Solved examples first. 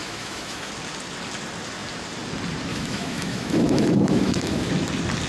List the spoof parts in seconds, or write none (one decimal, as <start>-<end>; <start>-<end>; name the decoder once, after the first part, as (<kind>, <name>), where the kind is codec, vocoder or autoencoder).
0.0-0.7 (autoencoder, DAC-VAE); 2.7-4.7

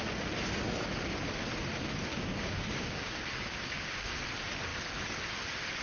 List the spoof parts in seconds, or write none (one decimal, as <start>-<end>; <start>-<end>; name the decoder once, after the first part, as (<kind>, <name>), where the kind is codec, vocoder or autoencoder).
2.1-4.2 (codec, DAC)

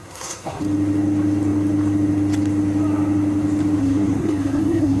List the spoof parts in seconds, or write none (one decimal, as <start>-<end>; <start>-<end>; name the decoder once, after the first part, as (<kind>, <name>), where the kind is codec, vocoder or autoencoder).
0.0-0.6 (codec, SNAC); 3.8-5.0